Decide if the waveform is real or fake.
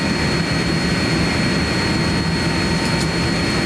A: real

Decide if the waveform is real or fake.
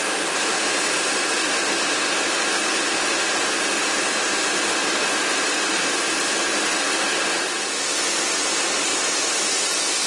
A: real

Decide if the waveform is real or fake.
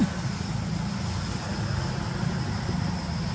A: real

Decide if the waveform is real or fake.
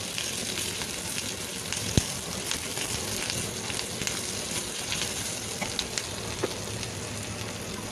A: real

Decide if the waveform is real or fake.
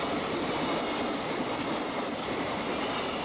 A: real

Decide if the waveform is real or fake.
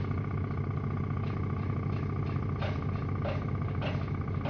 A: real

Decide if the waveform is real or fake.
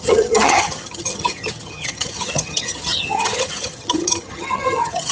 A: fake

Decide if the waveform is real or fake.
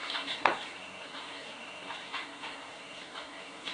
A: fake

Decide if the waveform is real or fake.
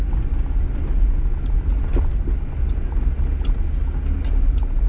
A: real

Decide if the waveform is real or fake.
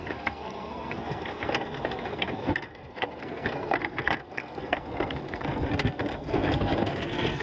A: fake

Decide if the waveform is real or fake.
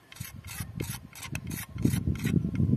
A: real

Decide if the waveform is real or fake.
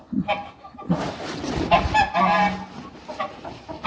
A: real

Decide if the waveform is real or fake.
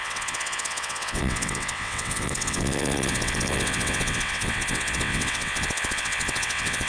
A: fake